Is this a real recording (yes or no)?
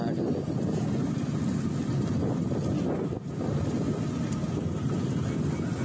yes